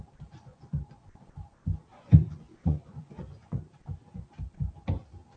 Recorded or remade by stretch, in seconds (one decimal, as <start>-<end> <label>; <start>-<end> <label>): 0.0-0.5 recorded; 0.5-1.2 remade; 1.2-1.9 recorded; 1.9-3.6 remade; 3.6-5.4 recorded